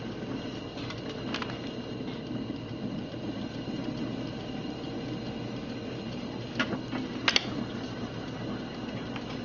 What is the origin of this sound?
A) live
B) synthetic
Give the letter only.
A